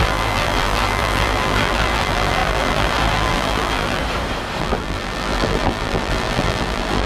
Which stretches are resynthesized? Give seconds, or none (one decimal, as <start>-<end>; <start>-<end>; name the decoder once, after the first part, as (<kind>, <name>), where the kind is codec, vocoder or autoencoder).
0.0-4.0 (vocoder, BigVGAN v2); 4.6-7.1